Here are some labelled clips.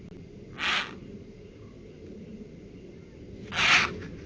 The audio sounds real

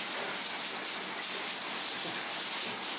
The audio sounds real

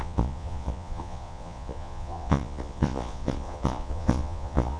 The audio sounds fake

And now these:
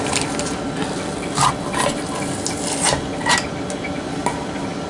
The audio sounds real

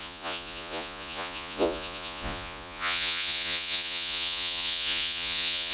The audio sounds fake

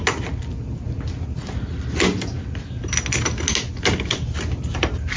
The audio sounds real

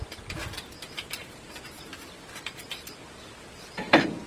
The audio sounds real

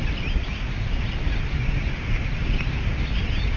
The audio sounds real